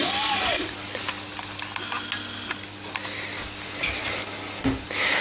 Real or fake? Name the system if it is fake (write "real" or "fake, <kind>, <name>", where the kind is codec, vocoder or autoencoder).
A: real